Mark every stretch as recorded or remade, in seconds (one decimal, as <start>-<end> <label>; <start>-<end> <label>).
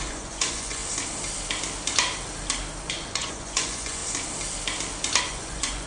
0.0-0.8 remade; 0.8-2.8 recorded; 2.8-4.0 remade; 4.0-5.2 recorded; 5.2-5.9 remade